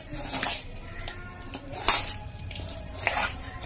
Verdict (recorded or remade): remade